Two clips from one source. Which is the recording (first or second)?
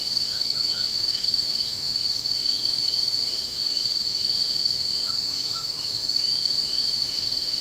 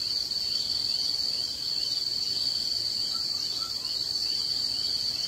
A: second